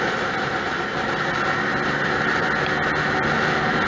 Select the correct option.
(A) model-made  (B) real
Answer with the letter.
B